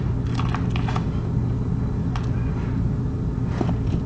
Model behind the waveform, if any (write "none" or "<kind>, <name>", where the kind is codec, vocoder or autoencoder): none